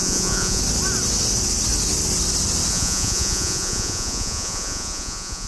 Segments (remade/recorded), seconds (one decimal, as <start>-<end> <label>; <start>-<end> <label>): 0.0-0.6 remade; 0.6-2.7 recorded; 2.7-5.5 remade